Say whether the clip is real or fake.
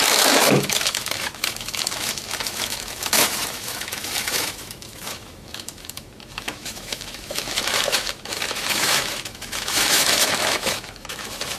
fake